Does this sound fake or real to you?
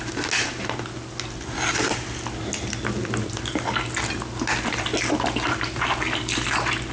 real